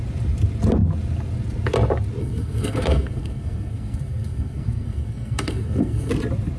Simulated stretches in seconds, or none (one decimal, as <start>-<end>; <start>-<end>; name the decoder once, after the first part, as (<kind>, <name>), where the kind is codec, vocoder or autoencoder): 2.2-6.1 (codec, SNAC)

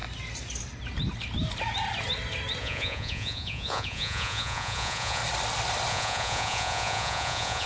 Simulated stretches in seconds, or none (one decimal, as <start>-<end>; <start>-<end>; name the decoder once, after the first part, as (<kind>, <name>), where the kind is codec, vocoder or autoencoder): 2.6-5.2 (vocoder, Vocos); 5.9-7.7

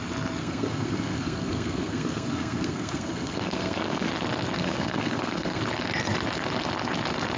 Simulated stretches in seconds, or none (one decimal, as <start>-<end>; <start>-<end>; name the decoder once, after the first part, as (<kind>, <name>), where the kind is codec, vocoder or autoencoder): 0.4-4.1 (codec, SNAC); 4.6-5.6

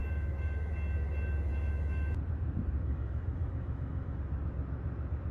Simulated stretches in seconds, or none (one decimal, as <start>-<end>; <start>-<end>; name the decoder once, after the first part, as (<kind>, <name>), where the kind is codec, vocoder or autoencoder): 0.0-0.7 (autoencoder, DAC-VAE); 1.5-2.1; 2.8-4.2

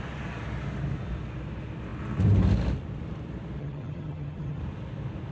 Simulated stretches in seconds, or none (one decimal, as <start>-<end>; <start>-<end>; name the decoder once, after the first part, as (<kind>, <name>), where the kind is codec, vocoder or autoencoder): 3.6-4.6 (vocoder, HiFi-GAN)

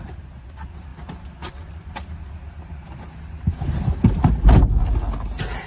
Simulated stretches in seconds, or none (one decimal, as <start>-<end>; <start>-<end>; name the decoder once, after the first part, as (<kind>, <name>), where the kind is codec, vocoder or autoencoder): none